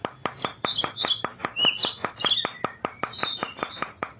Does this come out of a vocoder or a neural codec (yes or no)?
no